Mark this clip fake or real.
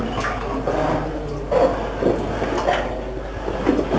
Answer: real